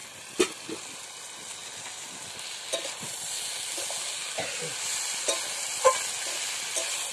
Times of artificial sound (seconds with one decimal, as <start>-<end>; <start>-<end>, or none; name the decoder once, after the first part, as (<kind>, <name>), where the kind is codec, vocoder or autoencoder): none